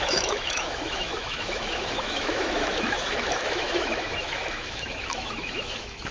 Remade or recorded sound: remade